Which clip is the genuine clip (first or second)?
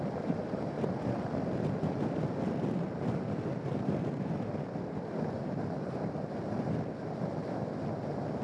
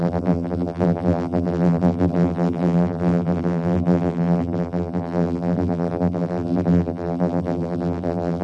first